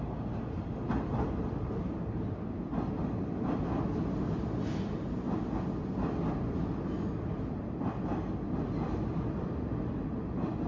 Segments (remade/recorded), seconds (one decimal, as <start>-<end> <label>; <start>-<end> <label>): 0.0-10.7 recorded